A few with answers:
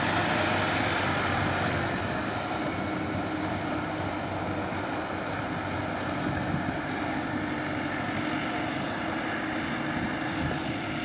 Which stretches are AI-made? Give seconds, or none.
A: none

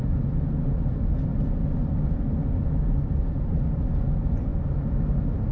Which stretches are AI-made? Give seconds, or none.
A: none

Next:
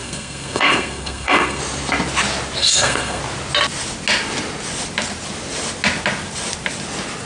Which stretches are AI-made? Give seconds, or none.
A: 0.0-1.6 (codec, SNAC); 2.6-3.2

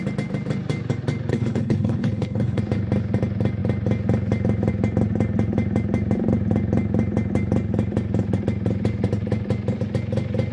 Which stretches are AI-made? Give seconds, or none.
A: 1.3-2.6 (codec, HILCodec)